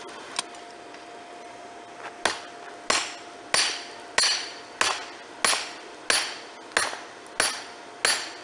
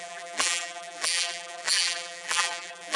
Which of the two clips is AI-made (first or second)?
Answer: second